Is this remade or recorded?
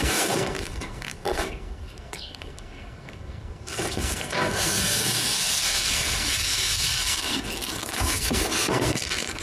remade